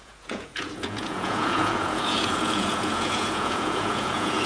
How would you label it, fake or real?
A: fake